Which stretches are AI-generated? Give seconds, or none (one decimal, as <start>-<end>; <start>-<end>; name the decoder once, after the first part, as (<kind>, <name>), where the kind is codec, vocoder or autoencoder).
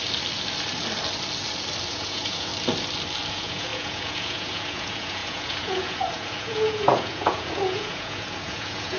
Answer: 1.9-2.5 (vocoder, Vocos); 3.3-9.0